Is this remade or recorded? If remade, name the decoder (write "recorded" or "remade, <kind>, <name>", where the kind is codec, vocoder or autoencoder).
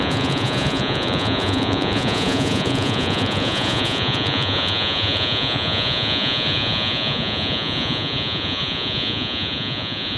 remade, vocoder, Vocos